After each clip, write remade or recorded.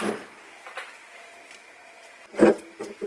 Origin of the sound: recorded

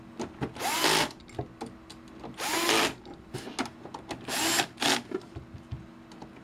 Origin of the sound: recorded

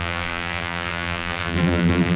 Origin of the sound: remade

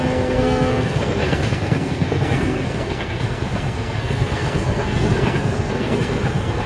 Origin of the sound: remade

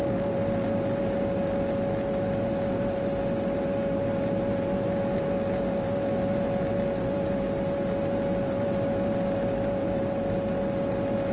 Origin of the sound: recorded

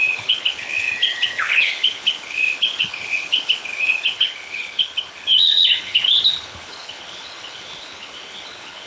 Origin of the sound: remade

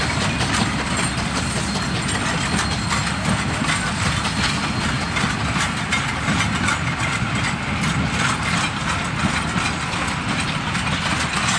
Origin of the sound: recorded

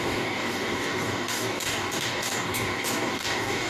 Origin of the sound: remade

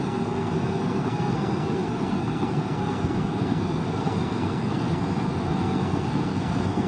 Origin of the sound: remade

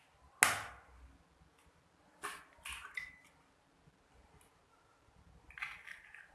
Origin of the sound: recorded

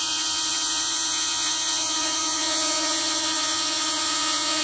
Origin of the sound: remade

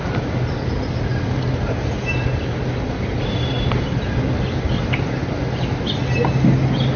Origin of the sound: recorded